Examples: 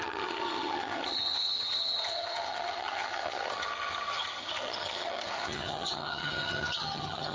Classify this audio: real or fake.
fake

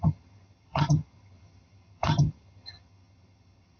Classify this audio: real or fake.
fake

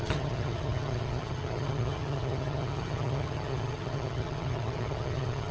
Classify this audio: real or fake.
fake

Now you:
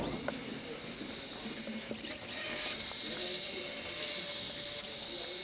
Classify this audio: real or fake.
real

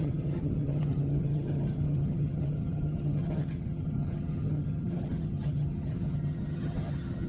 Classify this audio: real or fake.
fake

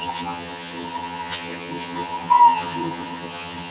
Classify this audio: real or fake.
fake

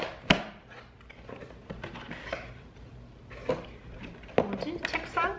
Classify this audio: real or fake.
real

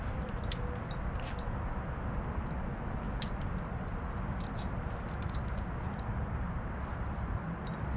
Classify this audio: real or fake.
real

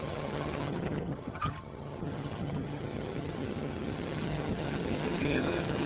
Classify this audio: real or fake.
fake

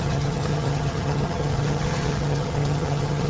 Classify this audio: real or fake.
fake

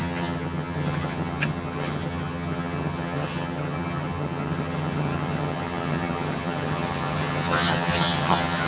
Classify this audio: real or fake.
fake